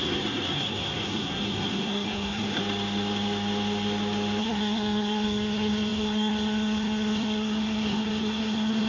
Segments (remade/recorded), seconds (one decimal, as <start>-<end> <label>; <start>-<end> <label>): 0.0-2.6 remade; 2.6-4.4 recorded; 4.4-8.9 remade